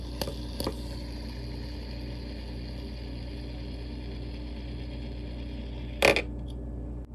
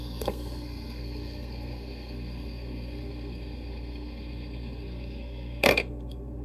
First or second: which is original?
first